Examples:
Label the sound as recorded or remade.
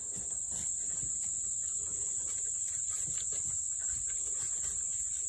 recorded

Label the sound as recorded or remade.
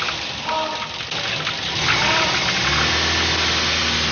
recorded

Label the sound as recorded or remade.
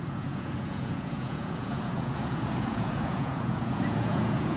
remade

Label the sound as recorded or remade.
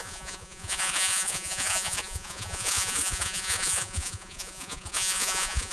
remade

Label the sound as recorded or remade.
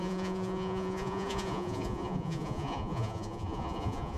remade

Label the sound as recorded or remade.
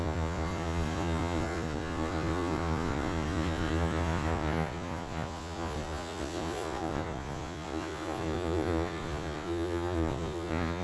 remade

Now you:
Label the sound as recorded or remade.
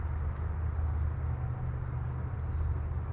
recorded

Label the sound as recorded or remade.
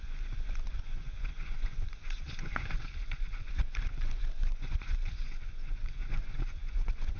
remade